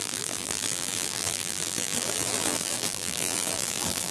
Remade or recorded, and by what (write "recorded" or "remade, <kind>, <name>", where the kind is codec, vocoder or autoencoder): remade, vocoder, BigVGAN v2